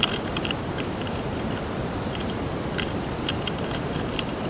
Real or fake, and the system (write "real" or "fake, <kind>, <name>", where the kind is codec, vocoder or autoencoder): fake, vocoder, BigVGAN v2